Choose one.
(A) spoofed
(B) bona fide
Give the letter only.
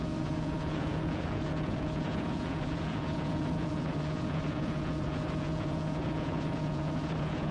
A